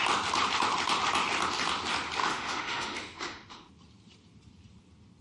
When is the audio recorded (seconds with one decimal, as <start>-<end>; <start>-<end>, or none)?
0.0-2.2; 3.7-5.2